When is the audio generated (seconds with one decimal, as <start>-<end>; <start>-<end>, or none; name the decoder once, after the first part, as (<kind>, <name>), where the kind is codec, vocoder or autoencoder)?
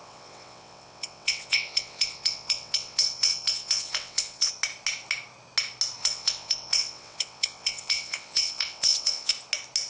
0.0-4.5 (vocoder, WaveNeXt); 6.0-9.3